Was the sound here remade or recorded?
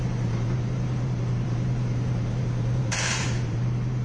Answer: remade